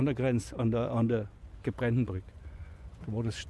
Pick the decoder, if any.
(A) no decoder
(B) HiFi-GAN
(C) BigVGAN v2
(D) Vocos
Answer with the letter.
D